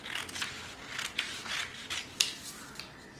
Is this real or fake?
real